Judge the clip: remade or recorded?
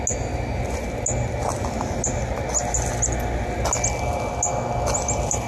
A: recorded